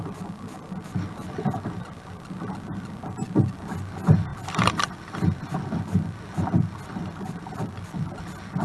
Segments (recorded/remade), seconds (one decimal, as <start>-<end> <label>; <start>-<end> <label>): 0.0-1.2 recorded; 1.2-3.0 remade; 3.0-8.6 recorded